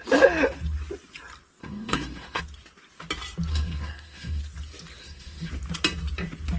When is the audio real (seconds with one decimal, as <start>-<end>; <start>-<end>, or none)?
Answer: 0.0-1.6; 2.4-3.5; 4.4-5.0; 5.5-6.6